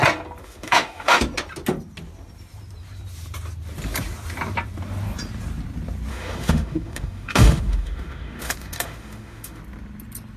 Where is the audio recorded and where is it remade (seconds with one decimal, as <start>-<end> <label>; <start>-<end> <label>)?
0.0-0.4 recorded; 0.4-1.2 remade; 1.2-6.1 recorded; 6.1-9.6 remade; 9.6-10.4 recorded